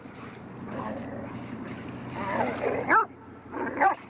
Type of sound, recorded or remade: recorded